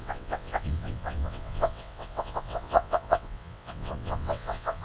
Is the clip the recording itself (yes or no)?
no